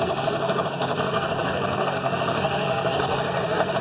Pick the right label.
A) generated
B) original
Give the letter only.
A